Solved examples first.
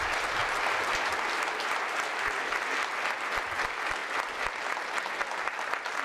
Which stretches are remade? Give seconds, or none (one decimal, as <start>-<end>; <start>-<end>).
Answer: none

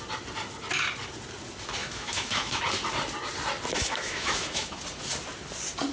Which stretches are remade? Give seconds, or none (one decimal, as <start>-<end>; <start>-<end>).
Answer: 1.8-2.6; 3.7-4.8

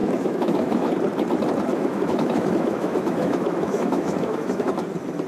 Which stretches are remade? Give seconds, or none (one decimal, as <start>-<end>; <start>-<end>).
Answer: 0.0-0.9; 1.7-4.7

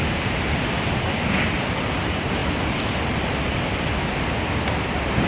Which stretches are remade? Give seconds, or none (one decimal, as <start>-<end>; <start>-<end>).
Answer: none

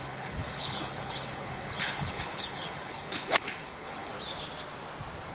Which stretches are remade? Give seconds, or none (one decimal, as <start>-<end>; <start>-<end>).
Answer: 0.0-4.1